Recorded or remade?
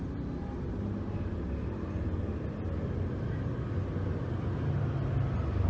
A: recorded